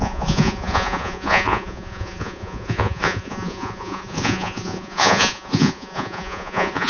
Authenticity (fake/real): fake